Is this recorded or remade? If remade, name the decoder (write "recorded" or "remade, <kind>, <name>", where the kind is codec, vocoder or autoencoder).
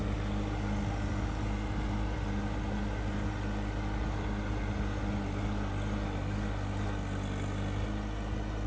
recorded